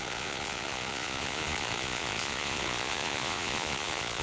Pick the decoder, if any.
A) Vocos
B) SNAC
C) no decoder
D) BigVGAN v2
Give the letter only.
A